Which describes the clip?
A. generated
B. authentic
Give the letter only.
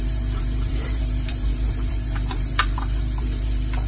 A